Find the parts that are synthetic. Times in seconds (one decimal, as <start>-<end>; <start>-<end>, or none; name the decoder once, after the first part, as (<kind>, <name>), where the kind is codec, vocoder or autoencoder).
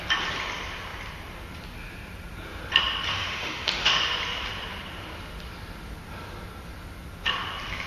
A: 3.1-4.0 (autoencoder, DAC-VAE)